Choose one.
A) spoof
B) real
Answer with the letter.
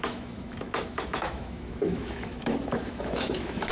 A